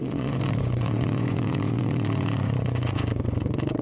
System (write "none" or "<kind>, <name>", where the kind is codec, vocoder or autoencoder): vocoder, Vocos